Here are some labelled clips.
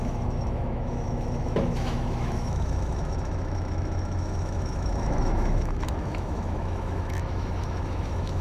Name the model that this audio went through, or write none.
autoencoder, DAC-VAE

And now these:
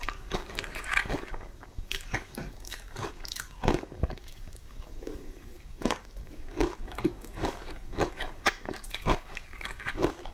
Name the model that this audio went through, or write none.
codec, DAC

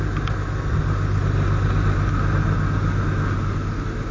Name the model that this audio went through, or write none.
none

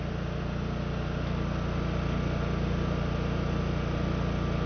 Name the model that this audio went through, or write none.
none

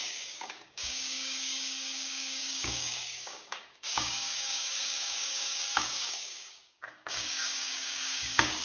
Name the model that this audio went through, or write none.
codec, DAC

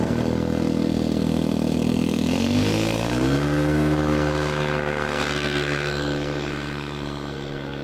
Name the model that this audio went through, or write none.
codec, SNAC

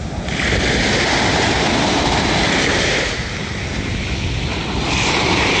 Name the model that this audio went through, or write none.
none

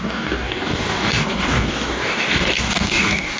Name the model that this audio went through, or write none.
codec, DAC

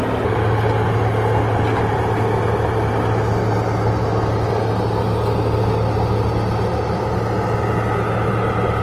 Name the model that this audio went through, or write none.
none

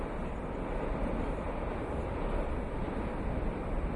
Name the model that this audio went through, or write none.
none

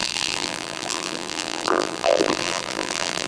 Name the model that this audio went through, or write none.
vocoder, BigVGAN v2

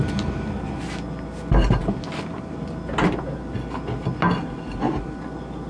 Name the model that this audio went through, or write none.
none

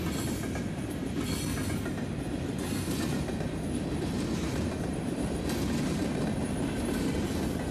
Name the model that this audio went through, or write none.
none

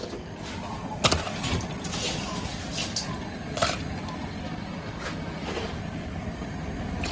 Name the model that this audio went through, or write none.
none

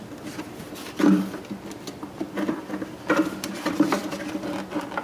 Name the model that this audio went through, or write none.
vocoder, BigVGAN v2